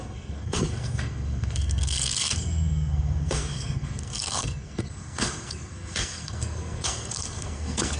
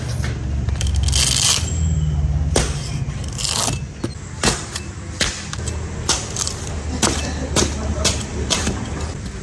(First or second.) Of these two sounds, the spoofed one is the first